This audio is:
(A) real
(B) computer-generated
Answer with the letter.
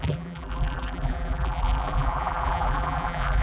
B